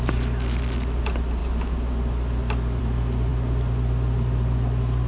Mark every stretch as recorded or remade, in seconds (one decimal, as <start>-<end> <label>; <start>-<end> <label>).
0.0-5.1 recorded